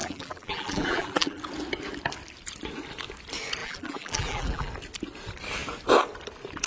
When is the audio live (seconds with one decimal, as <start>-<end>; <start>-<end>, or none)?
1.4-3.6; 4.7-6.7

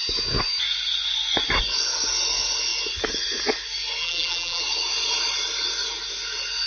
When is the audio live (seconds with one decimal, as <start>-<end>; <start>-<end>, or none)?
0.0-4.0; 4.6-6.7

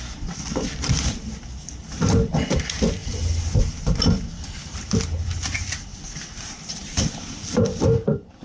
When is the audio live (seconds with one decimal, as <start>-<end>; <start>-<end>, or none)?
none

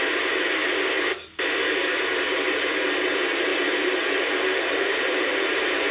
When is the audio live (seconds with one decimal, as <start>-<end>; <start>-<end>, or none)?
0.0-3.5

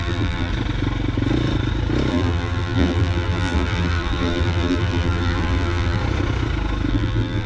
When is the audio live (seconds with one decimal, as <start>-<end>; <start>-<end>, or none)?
0.5-2.1; 6.0-6.9

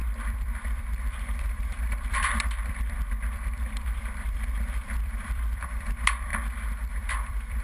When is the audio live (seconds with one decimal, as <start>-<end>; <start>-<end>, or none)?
6.3-6.9

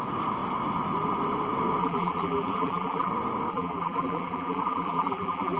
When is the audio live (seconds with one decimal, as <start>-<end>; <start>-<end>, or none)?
0.0-1.8; 3.1-3.5

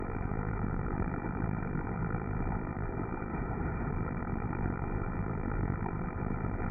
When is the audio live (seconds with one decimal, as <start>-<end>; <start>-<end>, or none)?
3.3-3.9